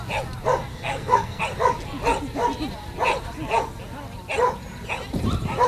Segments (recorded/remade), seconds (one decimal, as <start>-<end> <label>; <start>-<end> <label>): 0.0-0.7 recorded; 0.7-1.4 remade; 1.4-5.7 recorded